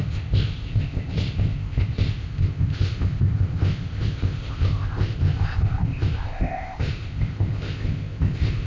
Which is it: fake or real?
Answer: fake